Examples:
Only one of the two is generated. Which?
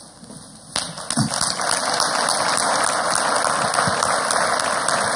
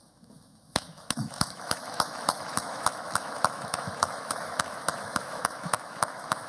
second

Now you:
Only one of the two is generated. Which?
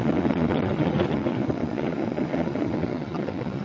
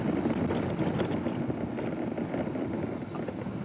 first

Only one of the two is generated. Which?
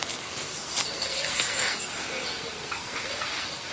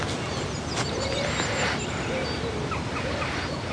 first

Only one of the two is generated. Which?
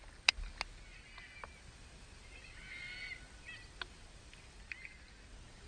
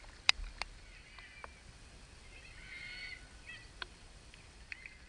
second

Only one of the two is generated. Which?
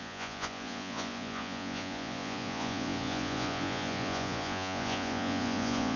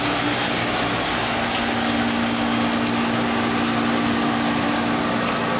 first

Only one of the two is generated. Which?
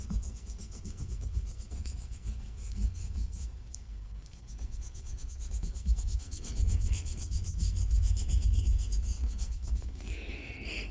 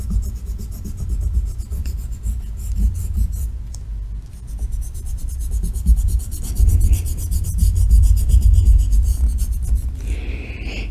first